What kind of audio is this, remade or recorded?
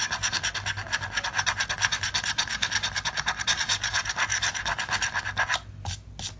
recorded